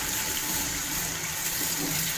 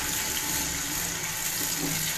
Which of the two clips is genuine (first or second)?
second